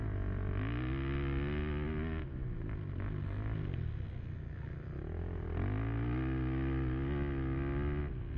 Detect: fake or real real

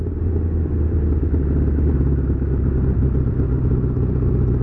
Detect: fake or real real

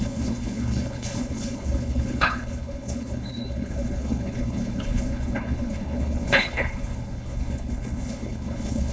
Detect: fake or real fake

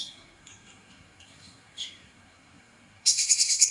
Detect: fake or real fake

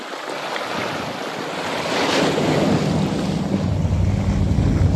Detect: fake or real real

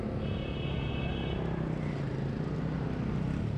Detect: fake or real real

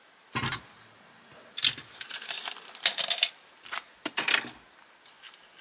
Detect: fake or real real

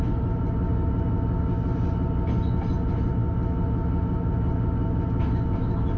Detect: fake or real real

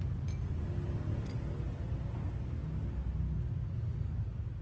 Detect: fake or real real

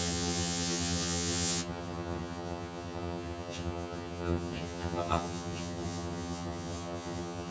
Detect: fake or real fake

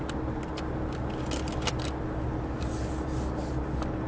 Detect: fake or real real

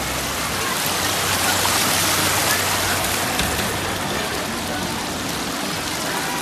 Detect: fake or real real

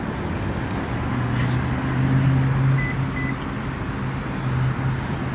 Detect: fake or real real